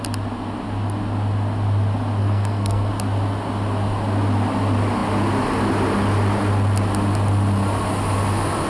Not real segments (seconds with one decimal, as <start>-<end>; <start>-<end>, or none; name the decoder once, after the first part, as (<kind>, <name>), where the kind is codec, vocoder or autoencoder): 2.2-2.9 (codec, SNAC)